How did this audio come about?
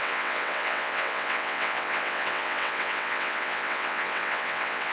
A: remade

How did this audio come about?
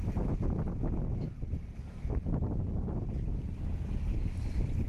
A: recorded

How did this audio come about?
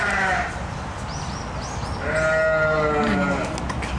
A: recorded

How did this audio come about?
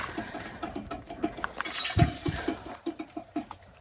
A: remade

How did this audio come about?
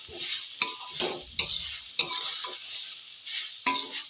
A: recorded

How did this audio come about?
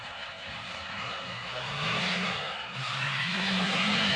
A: remade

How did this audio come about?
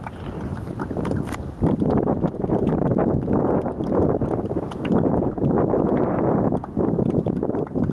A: recorded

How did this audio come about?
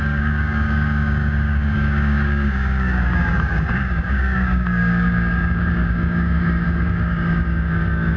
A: remade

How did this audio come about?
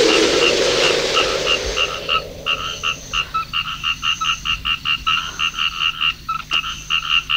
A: remade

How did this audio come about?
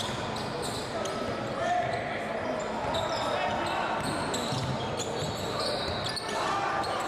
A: recorded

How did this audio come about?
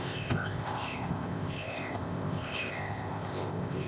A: remade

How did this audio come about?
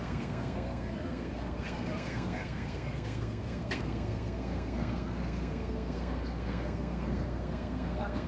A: remade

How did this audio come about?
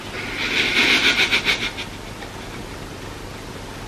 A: recorded